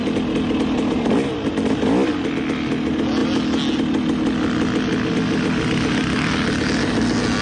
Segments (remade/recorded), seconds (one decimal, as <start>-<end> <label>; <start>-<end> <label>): 0.0-7.4 recorded